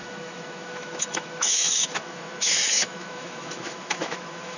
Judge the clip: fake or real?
fake